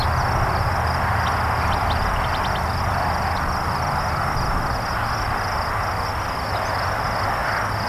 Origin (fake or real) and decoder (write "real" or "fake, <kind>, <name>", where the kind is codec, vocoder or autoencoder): real